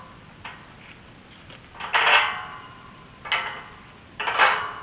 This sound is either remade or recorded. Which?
recorded